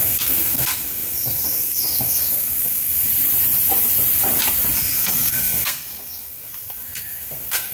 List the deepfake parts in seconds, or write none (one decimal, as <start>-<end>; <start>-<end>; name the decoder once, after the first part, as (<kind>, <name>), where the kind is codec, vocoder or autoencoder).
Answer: 0.0-3.1 (codec, SNAC); 4.8-7.7